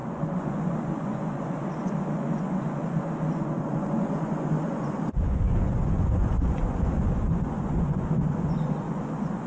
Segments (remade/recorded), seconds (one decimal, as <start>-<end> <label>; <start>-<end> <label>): 0.0-9.5 remade